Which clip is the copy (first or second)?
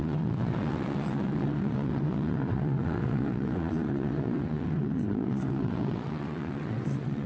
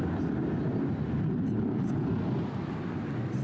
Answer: first